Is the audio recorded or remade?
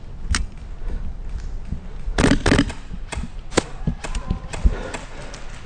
recorded